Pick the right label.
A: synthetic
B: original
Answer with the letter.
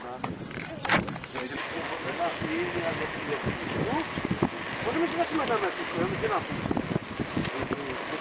B